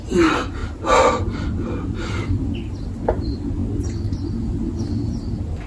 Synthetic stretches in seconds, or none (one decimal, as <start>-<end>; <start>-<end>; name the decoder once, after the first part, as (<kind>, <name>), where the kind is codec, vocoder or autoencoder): none

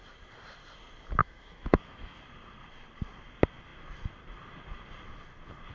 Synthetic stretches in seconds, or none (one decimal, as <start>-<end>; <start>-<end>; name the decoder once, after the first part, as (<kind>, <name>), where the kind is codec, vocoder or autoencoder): 1.2-2.2 (autoencoder, DAC-VAE)

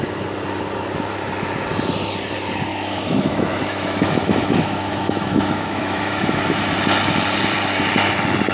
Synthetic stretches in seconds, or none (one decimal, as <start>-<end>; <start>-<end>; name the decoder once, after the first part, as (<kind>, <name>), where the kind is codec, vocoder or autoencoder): 2.7-6.8 (autoencoder, DAC-VAE)

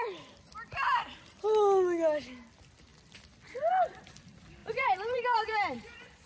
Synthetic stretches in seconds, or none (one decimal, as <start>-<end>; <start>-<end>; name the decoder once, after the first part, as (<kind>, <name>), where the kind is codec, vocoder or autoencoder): 4.6-6.3 (vocoder, Vocos)

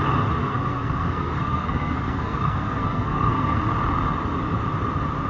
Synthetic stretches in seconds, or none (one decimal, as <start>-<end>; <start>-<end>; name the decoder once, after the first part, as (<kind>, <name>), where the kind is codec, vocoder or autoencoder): 0.4-3.6 (codec, SNAC)

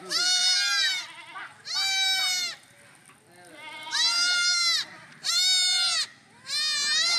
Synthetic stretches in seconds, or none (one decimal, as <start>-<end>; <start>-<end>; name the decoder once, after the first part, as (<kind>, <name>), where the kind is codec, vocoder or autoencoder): none

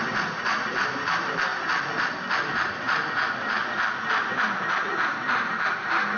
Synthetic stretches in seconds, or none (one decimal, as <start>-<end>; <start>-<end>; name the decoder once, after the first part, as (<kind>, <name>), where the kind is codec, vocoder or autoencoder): 0.0-1.5 (vocoder, BigVGAN v2); 2.5-3.6; 4.2-6.2

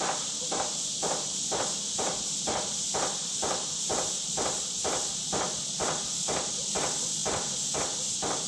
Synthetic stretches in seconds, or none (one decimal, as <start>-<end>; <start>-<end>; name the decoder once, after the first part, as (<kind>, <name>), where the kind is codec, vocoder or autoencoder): none